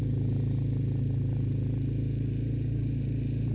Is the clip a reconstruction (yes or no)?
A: yes